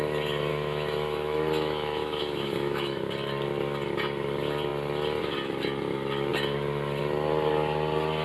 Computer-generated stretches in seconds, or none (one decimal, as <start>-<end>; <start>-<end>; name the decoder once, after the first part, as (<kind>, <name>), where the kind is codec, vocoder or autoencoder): 0.5-3.0 (autoencoder, DAC-VAE)